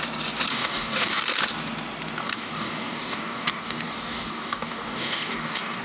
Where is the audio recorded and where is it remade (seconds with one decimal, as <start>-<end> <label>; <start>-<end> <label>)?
0.0-0.5 recorded; 0.5-1.2 remade; 1.2-2.2 recorded; 2.2-5.8 remade